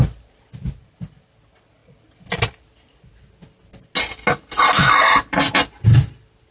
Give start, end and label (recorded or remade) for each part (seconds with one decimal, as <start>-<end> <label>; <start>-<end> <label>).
0.0-6.5 recorded